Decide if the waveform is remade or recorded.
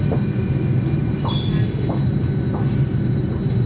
recorded